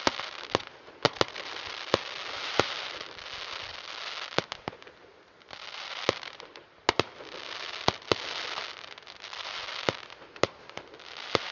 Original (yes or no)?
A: yes